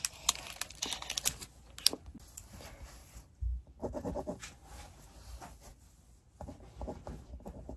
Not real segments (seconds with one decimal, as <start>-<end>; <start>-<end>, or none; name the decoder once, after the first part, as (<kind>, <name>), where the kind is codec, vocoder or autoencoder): none